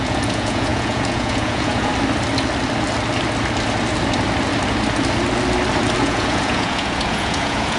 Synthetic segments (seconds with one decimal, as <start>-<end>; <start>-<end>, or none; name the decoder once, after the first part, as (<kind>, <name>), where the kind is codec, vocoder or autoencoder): 0.0-1.9 (vocoder, Vocos); 6.0-7.8

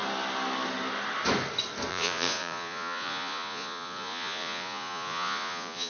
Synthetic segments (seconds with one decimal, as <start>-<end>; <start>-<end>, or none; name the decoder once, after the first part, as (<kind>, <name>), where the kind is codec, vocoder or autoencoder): 1.9-5.9 (vocoder, Vocos)

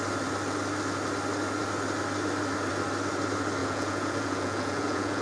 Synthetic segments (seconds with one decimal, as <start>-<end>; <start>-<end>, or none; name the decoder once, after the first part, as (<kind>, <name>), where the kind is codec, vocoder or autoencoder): 3.6-5.2 (vocoder, Vocos)

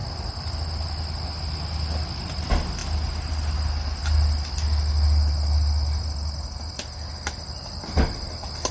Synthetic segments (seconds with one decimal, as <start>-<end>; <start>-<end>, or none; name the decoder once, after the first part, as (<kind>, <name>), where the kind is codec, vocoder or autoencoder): none

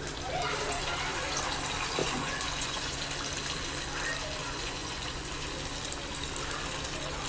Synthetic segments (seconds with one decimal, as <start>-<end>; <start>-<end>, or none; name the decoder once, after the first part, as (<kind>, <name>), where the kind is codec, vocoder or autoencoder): 2.0-3.0 (vocoder, Vocos); 4.4-5.3

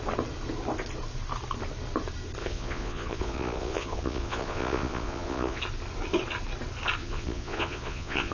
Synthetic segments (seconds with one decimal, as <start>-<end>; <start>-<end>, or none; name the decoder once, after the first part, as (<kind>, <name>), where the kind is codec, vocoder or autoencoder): 2.4-5.6 (vocoder, Vocos); 7.0-8.3